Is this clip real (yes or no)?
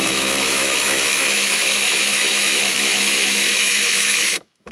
no